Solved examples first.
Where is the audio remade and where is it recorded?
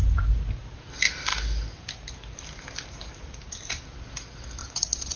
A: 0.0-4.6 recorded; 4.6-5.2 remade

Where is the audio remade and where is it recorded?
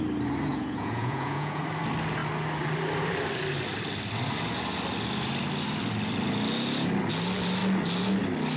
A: 0.0-0.5 recorded; 0.5-1.6 remade; 1.6-8.6 recorded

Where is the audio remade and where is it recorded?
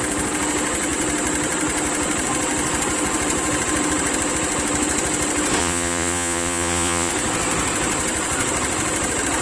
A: 0.0-5.6 recorded; 5.6-7.1 remade; 7.1-9.4 recorded